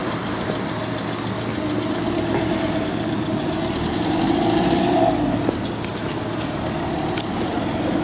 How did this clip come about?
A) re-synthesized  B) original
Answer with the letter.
B